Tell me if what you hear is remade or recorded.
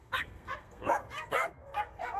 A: remade